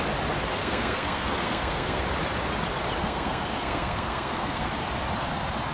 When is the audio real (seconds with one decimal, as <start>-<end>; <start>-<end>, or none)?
0.0-0.6; 2.0-3.0; 4.7-5.7